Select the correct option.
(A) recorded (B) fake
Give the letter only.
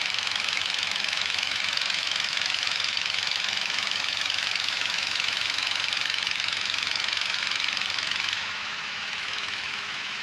B